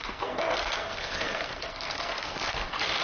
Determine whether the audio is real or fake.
fake